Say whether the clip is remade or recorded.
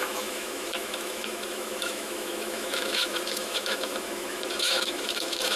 remade